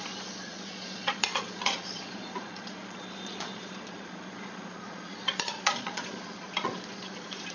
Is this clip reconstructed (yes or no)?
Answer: yes